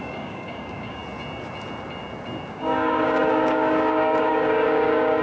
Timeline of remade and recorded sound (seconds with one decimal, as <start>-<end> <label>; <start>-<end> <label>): 0.0-1.0 remade; 1.0-2.5 recorded; 2.5-5.2 remade